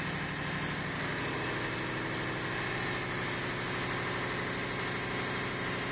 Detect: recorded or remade recorded